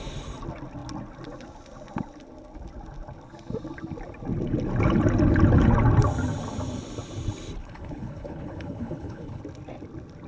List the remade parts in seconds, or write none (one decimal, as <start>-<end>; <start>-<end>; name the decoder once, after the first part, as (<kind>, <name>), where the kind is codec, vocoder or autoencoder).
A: 7.6-9.4 (codec, HILCodec)